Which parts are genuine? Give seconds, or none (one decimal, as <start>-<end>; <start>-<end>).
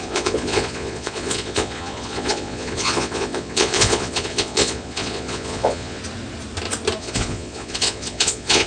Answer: 6.0-7.0